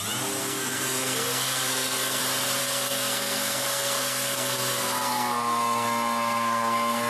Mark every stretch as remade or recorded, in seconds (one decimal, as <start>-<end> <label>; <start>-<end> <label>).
0.0-0.4 recorded; 0.4-2.2 remade; 2.2-2.6 recorded; 2.6-7.1 remade